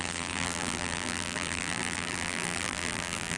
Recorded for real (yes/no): no